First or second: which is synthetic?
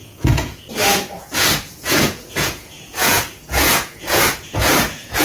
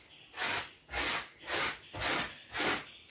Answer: first